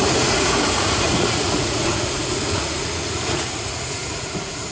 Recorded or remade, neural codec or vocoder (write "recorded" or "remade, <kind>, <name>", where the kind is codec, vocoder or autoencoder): remade, vocoder, Vocos